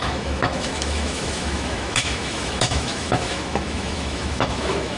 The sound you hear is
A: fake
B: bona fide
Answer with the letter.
A